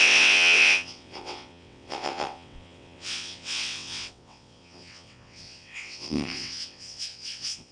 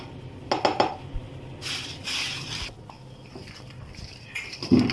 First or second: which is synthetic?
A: first